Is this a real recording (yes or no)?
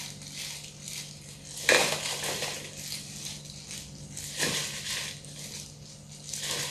yes